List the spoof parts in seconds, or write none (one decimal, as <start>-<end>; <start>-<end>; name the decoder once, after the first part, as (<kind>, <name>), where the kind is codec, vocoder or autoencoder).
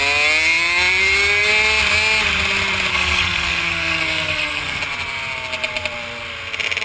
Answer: 2.9-4.8 (codec, SNAC)